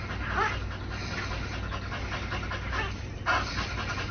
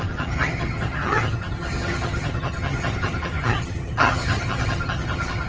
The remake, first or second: second